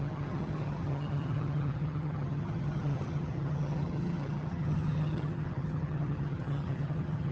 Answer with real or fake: fake